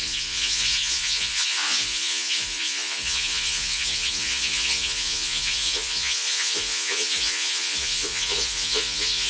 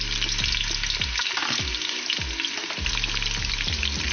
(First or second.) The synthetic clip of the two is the first